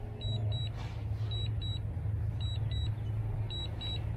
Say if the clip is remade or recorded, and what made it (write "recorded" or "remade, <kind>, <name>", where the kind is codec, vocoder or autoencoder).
recorded